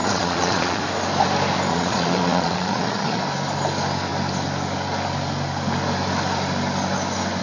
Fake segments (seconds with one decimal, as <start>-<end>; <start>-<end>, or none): 0.0-0.8; 1.7-3.2